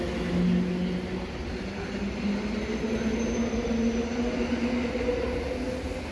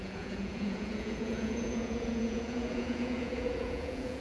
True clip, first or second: first